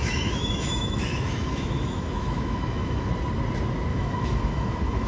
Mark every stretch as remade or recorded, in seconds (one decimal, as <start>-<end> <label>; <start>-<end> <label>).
0.0-3.1 remade; 3.1-3.9 recorded; 3.9-5.1 remade